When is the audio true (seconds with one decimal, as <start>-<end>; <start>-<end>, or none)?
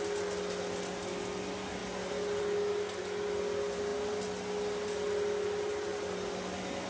0.0-6.9